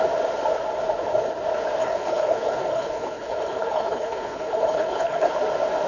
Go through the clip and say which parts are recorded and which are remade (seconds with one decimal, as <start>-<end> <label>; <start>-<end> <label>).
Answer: 0.0-1.8 recorded; 1.8-5.3 remade; 5.3-5.9 recorded